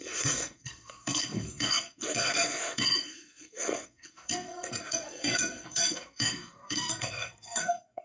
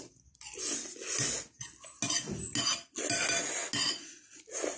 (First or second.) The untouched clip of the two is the second